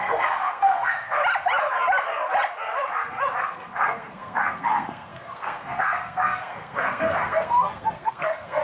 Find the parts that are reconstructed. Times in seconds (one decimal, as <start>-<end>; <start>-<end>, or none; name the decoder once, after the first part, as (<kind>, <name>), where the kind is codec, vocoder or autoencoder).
0.0-1.2 (codec, SNAC); 3.4-8.6